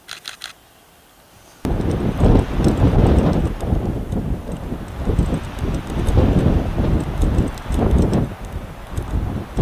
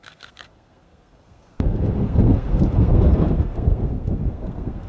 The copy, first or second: second